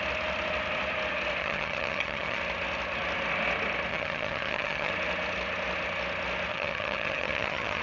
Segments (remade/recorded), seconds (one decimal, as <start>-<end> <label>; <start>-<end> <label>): 0.0-1.4 recorded; 1.4-2.4 remade; 2.4-3.9 recorded; 3.9-4.9 remade; 4.9-6.5 recorded; 6.5-7.8 remade